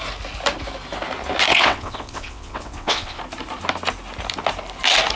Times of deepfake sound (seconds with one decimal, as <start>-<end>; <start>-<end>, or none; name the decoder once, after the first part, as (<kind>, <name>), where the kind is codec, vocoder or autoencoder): 1.5-3.2 (vocoder, WaveNeXt)